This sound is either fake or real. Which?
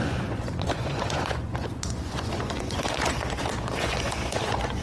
fake